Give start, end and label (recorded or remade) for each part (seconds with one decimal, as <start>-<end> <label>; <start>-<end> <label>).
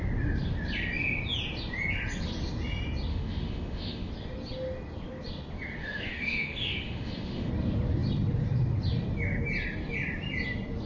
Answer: 0.0-3.1 recorded; 3.1-4.1 remade; 4.1-5.8 recorded; 5.8-7.5 remade; 7.5-10.9 recorded